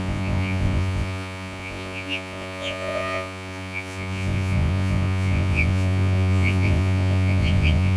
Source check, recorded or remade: remade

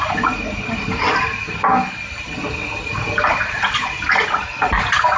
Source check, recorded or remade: remade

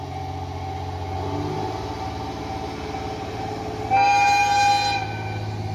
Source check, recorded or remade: recorded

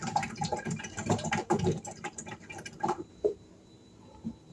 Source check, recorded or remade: remade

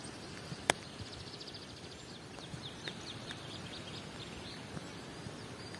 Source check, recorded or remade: recorded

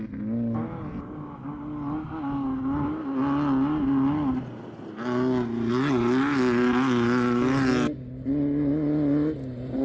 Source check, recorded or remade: recorded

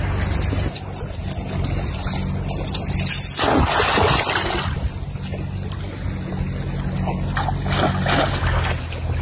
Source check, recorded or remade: recorded